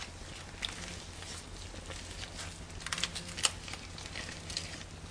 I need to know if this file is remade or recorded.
recorded